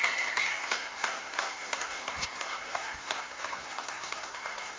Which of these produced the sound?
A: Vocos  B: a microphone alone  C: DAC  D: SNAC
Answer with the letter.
D